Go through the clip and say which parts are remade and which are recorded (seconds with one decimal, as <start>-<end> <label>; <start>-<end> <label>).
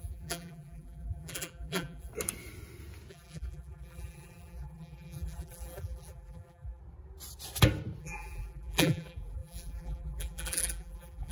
0.0-2.1 remade; 2.1-3.1 recorded; 3.1-6.8 remade; 6.8-8.0 recorded; 8.0-11.3 remade